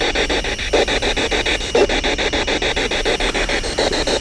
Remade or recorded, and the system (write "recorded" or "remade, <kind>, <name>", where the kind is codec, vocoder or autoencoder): recorded